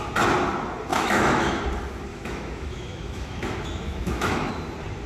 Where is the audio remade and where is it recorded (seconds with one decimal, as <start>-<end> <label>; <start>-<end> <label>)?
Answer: 0.0-0.9 recorded; 0.9-1.6 remade; 1.6-2.1 recorded; 2.1-4.5 remade; 4.5-5.1 recorded